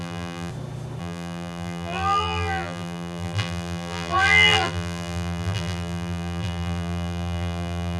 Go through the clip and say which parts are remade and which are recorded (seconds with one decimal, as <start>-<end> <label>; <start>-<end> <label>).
0.0-0.5 remade; 0.5-1.0 recorded; 1.0-8.0 remade